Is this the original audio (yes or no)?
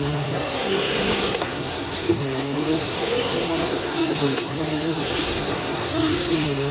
no